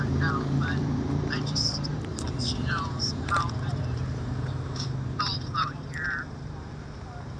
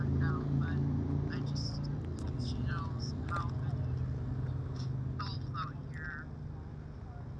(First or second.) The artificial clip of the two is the first